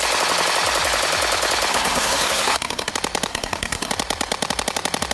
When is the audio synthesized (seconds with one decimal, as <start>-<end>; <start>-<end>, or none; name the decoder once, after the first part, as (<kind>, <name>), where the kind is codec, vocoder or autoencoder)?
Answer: 1.7-2.9 (codec, SNAC); 3.3-3.9